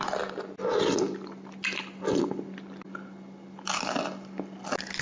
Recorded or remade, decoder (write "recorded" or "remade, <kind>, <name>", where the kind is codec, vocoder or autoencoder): recorded